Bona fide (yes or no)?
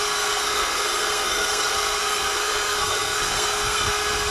no